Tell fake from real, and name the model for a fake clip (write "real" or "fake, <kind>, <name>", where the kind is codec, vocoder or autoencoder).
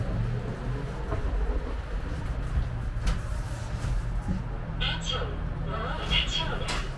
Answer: real